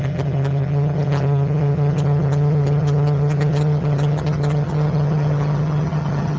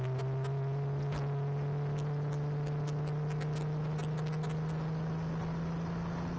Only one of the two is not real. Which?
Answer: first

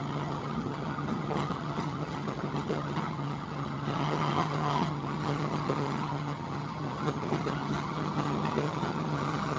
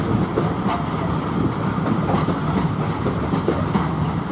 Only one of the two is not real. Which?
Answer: first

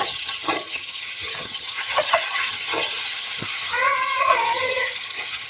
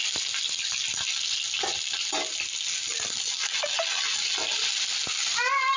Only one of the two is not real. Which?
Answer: first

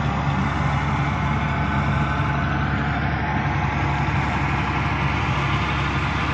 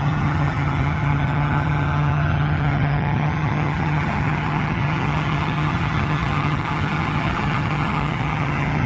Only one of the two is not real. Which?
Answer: second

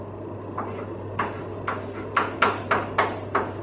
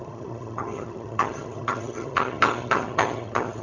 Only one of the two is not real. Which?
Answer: second